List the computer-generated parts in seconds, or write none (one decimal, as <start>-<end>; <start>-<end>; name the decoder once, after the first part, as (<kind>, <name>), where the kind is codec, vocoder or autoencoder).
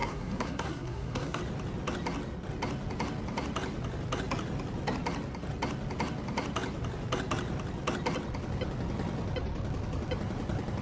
0.0-1.4 (codec, SNAC)